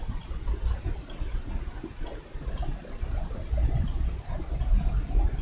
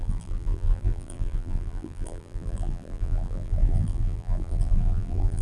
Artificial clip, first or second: second